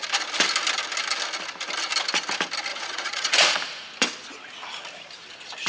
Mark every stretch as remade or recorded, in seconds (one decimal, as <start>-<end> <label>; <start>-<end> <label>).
0.0-2.7 recorded; 2.7-3.9 remade; 3.9-5.7 recorded